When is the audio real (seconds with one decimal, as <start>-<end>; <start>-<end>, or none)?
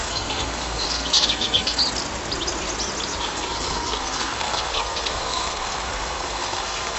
1.8-3.2